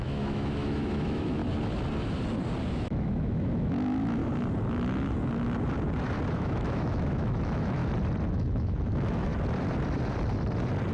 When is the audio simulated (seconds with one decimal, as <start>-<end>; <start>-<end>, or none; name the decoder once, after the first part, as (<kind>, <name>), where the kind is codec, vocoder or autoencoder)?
0.0-1.4 (autoencoder, DAC-VAE); 2.7-4.2; 6.3-7.8; 8.3-9.3